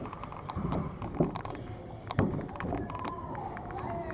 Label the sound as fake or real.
fake